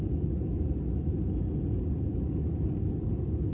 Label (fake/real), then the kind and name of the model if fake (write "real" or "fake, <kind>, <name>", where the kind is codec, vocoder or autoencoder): real